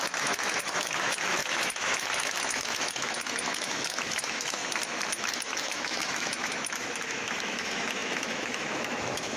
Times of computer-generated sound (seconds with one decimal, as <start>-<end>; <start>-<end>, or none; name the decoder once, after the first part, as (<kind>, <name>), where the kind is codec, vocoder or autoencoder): 0.0-4.6 (autoencoder, DAC-VAE); 5.2-9.4